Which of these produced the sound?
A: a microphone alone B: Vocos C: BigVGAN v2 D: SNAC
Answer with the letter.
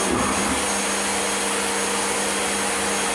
A